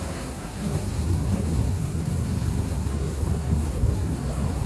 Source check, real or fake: fake